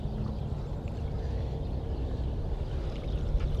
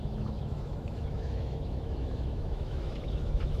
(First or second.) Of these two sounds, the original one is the first